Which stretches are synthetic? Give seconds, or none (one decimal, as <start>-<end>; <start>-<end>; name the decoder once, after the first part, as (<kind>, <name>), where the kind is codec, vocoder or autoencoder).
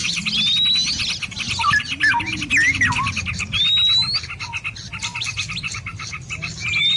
none